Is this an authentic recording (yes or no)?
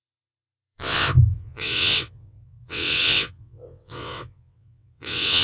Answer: no